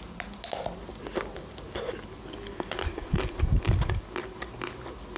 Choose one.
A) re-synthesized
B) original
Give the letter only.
B